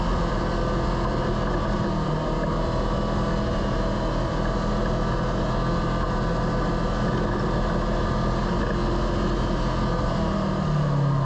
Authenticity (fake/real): real